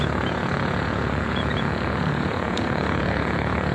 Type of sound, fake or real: fake